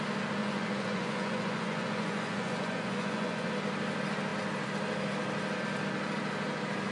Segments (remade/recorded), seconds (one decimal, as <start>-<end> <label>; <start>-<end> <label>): 0.0-0.4 recorded; 0.4-3.5 remade; 3.5-6.9 recorded